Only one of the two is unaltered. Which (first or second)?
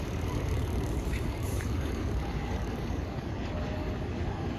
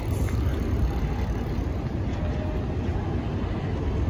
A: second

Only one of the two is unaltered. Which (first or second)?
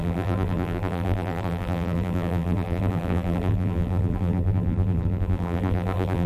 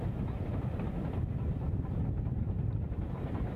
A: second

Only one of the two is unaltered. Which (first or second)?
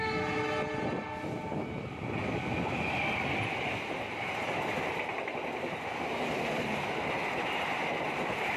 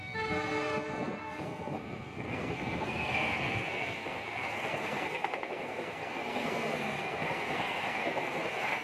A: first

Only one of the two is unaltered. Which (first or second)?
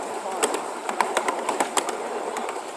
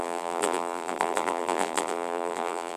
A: first